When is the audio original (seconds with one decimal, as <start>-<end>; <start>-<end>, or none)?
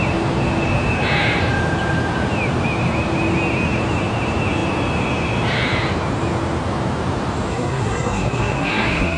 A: 0.0-7.5